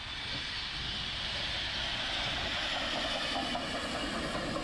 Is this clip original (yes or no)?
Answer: yes